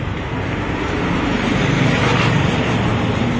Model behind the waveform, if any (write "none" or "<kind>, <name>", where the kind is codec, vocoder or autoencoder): none